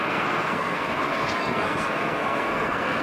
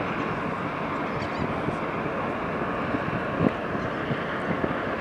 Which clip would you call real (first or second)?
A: second